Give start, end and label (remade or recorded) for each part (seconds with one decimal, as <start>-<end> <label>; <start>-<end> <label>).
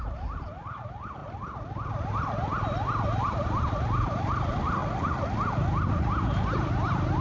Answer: 0.0-1.2 remade; 1.2-3.3 recorded; 3.3-4.8 remade; 4.8-6.0 recorded; 6.0-7.2 remade